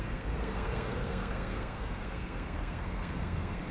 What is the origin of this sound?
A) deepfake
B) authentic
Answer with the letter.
A